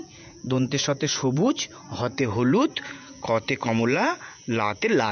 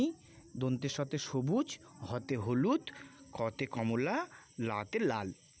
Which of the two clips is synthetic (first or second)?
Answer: first